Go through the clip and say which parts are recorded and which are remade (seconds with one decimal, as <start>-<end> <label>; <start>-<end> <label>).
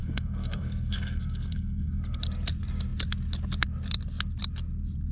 0.0-2.2 remade; 2.2-5.1 recorded